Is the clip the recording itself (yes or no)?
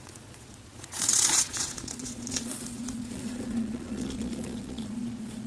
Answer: no